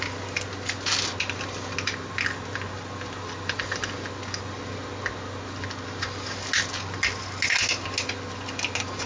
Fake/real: real